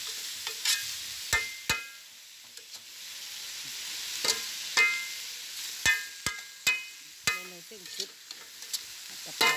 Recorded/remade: recorded